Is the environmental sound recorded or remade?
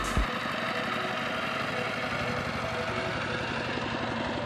recorded